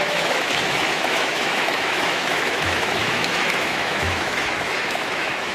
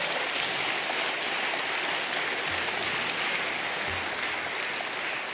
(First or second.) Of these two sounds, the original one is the second